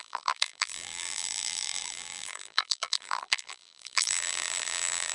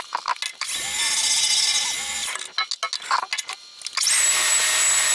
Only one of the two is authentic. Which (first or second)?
second